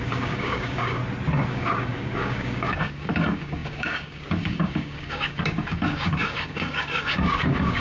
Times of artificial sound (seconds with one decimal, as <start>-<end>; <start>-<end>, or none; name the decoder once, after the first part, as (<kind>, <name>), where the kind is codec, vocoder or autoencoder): 0.0-1.0 (codec, DAC); 1.5-7.8